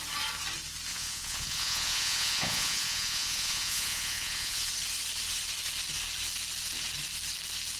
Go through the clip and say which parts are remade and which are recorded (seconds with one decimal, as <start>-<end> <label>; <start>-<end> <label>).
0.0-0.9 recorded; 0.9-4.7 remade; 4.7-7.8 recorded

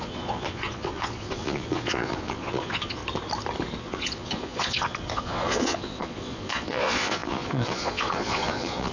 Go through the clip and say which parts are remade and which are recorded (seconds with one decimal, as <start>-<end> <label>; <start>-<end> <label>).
0.0-3.0 remade; 3.0-3.8 recorded; 3.8-8.9 remade

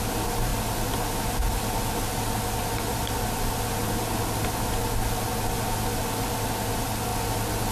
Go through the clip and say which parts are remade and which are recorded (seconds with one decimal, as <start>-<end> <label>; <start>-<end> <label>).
0.0-7.7 recorded

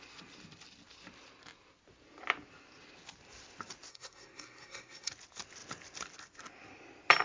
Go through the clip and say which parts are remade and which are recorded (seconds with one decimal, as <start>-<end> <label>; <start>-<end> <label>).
0.0-3.9 recorded; 3.9-5.1 remade; 5.1-7.2 recorded